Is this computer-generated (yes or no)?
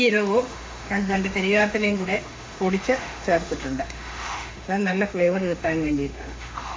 yes